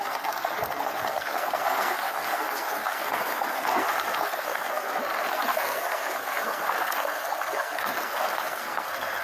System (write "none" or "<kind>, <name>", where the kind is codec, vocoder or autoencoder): codec, SNAC